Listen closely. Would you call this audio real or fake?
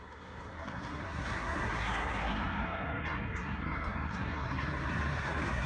fake